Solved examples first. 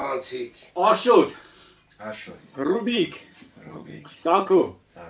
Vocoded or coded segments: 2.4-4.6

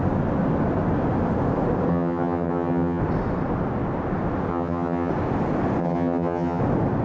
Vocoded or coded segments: 1.9-3.0; 4.5-5.1; 5.8-6.6

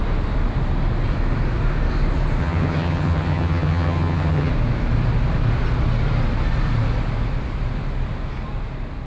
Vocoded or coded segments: 2.4-4.5

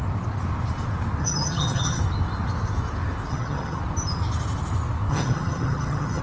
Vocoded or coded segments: 1.2-2.0; 3.3-3.8; 5.1-6.2

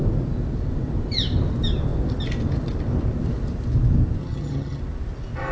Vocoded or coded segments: 4.2-4.8

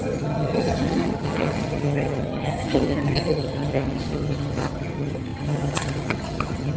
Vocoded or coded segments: 0.0-6.8